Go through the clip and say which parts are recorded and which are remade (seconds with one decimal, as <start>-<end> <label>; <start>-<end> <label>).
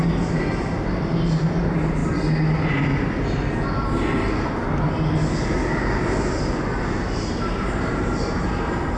0.0-2.0 remade; 2.0-6.8 recorded; 6.8-9.0 remade